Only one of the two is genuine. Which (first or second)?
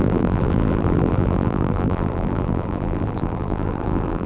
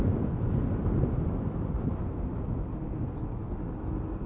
second